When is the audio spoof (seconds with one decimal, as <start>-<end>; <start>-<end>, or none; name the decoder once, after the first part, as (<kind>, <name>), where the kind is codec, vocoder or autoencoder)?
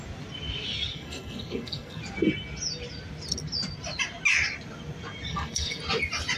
0.9-2.0 (codec, SNAC); 5.3-5.8